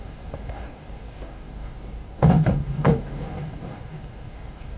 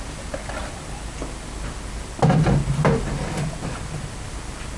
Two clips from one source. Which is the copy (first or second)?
first